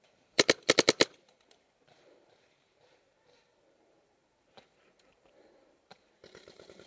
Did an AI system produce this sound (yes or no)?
yes